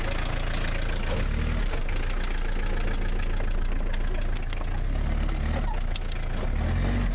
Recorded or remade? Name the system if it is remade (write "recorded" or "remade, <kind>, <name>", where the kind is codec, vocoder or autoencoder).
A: recorded